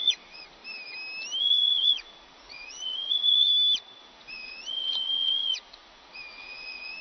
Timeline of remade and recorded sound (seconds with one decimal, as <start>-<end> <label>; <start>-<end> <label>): 0.0-0.6 remade; 0.6-1.4 recorded; 1.4-3.5 remade; 3.5-4.0 recorded; 4.0-7.0 remade